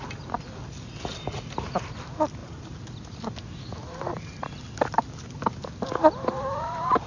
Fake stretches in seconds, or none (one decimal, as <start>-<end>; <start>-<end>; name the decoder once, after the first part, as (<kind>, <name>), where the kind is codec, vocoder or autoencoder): none